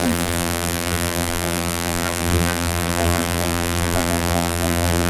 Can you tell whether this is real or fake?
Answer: fake